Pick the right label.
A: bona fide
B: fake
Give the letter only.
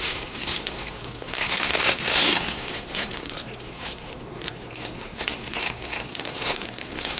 B